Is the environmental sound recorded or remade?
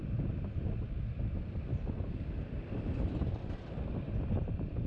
recorded